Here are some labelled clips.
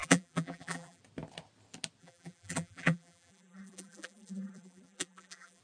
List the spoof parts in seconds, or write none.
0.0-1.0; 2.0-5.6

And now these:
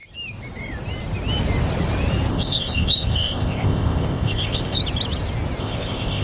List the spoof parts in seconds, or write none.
2.3-4.8; 5.6-6.2

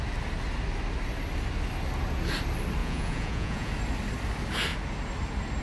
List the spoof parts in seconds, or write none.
2.8-3.7

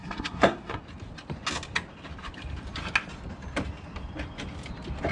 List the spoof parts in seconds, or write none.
0.0-0.8

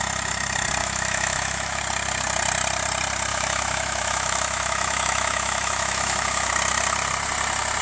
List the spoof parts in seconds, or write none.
0.8-1.8; 3.3-6.5

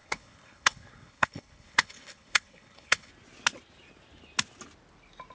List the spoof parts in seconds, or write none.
0.0-3.1